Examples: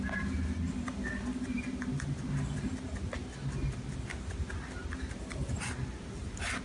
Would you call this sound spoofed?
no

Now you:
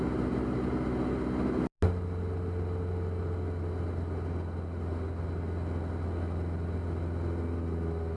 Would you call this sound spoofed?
no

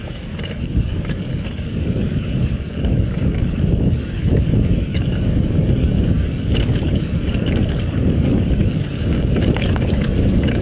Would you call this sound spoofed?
yes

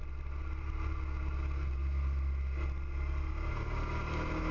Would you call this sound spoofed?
no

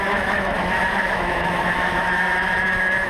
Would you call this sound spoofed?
yes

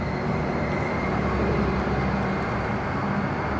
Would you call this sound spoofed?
no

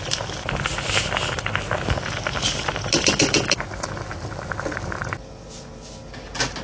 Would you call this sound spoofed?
no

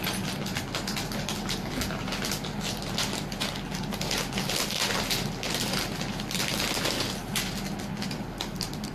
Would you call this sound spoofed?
no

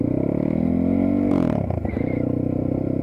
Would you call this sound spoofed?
no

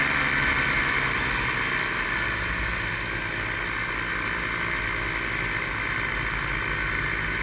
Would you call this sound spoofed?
no